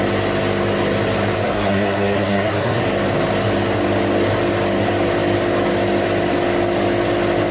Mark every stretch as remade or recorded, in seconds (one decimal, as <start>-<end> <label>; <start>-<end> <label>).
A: 0.0-1.4 recorded; 1.4-2.8 remade; 2.8-7.5 recorded